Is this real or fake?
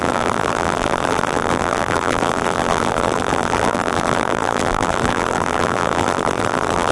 fake